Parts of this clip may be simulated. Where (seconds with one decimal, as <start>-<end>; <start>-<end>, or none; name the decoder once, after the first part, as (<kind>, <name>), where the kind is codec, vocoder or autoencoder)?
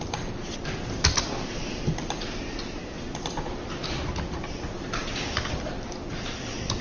0.0-2.8 (vocoder, BigVGAN v2); 5.5-6.8